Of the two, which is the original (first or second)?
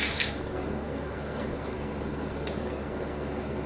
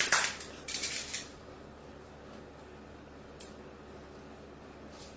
second